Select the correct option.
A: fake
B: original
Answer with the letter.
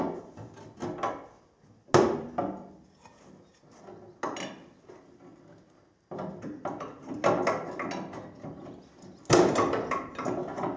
B